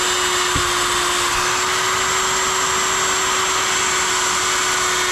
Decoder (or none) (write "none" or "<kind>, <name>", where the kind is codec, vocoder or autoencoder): none